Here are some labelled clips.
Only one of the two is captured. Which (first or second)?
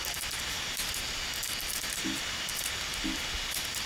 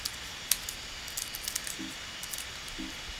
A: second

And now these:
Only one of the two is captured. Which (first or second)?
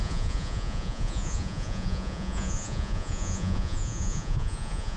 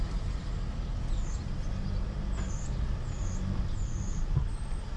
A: second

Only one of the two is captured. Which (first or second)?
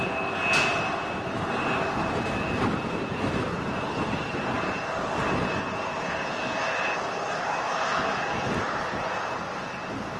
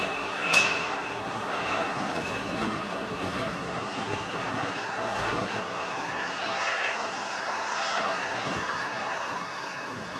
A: first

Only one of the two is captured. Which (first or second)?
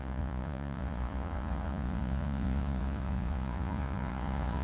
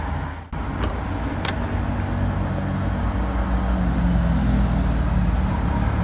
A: second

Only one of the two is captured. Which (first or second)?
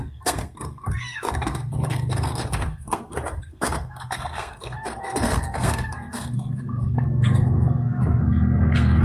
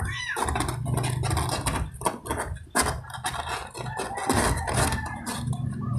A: second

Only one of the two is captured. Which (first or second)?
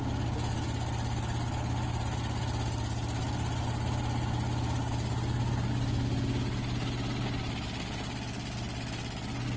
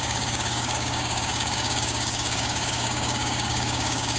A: first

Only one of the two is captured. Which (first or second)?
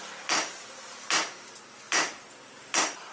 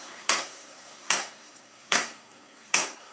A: first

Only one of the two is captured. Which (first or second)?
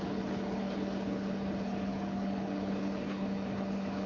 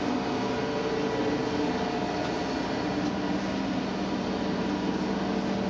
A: second